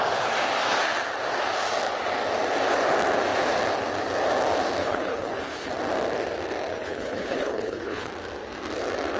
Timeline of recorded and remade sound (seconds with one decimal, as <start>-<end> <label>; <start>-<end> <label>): 0.0-4.8 recorded; 4.8-5.7 remade; 5.7-6.7 recorded; 6.7-8.1 remade; 8.1-9.2 recorded